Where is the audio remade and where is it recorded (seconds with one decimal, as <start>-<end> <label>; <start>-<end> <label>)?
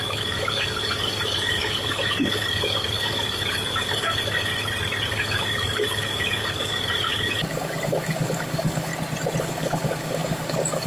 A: 0.0-4.5 remade; 4.5-5.1 recorded; 5.1-8.9 remade; 8.9-9.4 recorded; 9.4-10.9 remade